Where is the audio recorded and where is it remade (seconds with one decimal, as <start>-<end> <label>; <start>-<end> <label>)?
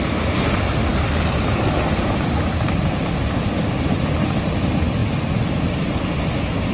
0.0-6.7 recorded